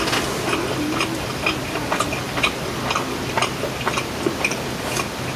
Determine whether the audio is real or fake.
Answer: real